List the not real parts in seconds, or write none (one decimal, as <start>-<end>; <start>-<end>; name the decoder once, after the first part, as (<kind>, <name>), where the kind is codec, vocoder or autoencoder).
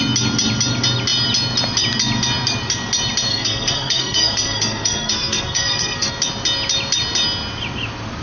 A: 3.3-6.1 (codec, SNAC)